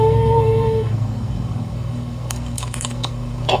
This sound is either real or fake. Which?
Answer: fake